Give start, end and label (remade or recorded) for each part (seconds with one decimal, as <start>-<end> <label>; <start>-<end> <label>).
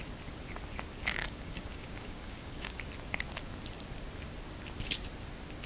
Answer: 0.0-1.2 recorded; 1.2-2.8 remade; 2.8-5.7 recorded